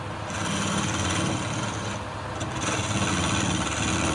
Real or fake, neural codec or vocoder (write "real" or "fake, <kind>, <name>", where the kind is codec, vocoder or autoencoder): real